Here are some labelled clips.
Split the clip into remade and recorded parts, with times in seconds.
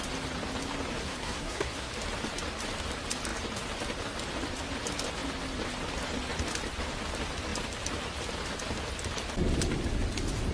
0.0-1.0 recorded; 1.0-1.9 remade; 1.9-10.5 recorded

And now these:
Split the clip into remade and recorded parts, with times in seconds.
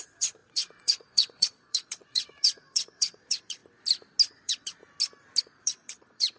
0.0-3.6 remade; 3.6-4.3 recorded; 4.3-4.8 remade; 4.8-5.4 recorded; 5.4-6.4 remade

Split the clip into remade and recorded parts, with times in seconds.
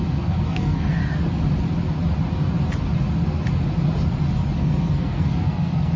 0.0-1.0 remade; 1.0-4.6 recorded; 4.6-6.0 remade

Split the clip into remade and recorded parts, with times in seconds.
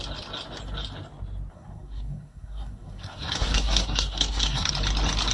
0.0-1.5 recorded; 1.5-4.7 remade; 4.7-5.3 recorded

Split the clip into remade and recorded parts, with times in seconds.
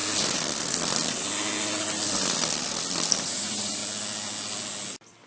0.0-3.2 recorded; 3.2-3.8 remade; 3.8-5.3 recorded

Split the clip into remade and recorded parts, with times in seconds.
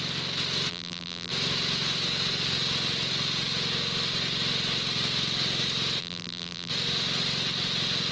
0.0-0.7 recorded; 0.7-1.3 remade; 1.3-6.0 recorded; 6.0-6.7 remade; 6.7-8.1 recorded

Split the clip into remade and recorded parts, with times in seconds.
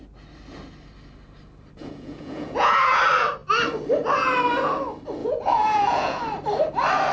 0.0-1.8 recorded; 1.8-3.0 remade; 3.0-5.2 recorded; 5.2-6.2 remade; 6.2-7.1 recorded